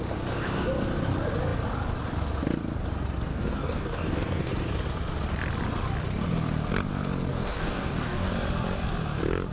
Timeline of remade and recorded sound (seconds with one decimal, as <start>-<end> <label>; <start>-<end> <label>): 0.0-3.3 recorded; 3.3-4.5 remade; 4.5-7.3 recorded; 7.3-8.3 remade; 8.3-9.5 recorded